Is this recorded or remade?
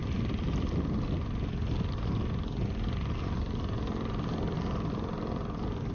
recorded